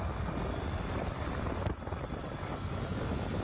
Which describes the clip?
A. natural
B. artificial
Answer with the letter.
A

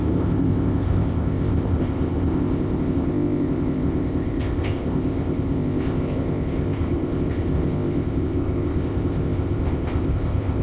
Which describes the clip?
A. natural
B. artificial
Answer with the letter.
B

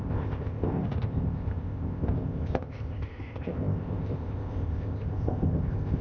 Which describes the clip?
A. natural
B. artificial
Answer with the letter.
B